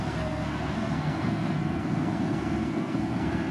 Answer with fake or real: fake